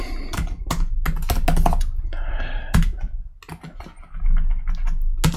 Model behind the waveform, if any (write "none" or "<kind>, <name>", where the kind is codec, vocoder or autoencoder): none